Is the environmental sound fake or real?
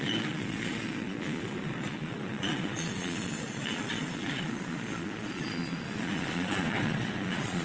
fake